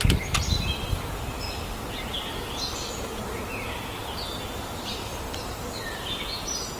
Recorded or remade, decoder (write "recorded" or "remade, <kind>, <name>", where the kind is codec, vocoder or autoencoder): recorded